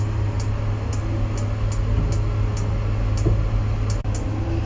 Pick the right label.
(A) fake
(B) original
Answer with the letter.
B